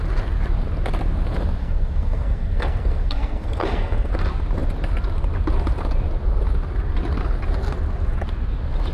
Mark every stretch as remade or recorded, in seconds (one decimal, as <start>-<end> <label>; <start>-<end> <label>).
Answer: 0.0-1.6 recorded; 1.6-4.1 remade; 4.1-8.9 recorded